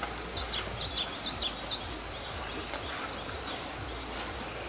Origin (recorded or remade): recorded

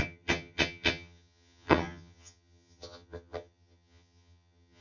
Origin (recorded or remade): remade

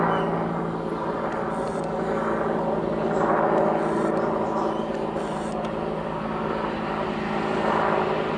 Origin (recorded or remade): recorded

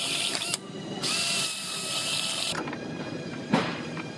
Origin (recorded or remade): remade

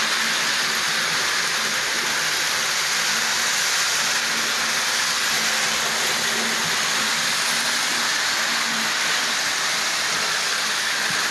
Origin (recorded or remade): recorded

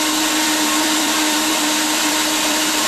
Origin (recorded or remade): remade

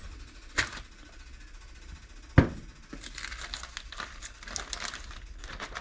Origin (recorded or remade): recorded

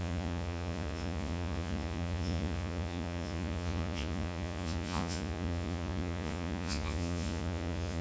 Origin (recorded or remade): remade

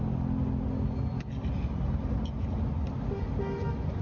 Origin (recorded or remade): recorded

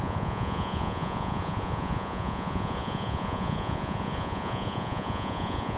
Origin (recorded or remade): remade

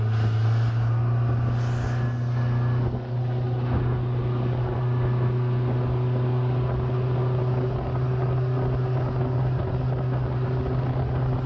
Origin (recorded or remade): recorded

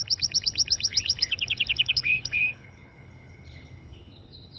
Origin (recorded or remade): remade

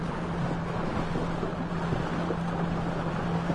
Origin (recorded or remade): recorded